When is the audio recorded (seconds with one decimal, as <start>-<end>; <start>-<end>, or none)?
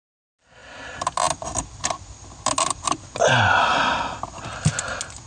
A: 0.0-5.3